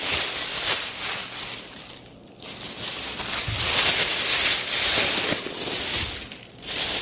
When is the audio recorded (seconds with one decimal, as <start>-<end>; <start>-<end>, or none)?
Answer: 0.0-7.0